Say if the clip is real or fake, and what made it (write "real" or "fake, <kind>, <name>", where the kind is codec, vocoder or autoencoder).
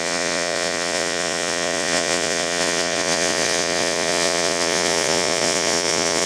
fake, vocoder, Vocos